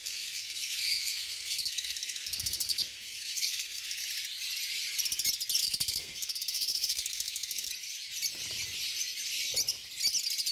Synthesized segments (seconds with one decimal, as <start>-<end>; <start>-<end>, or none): 0.0-4.0; 5.6-7.7